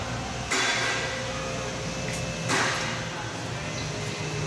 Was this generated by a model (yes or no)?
no